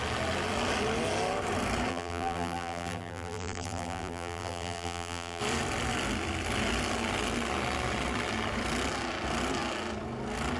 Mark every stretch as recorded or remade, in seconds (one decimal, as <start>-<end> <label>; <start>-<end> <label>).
0.0-1.9 recorded; 1.9-5.4 remade; 5.4-10.6 recorded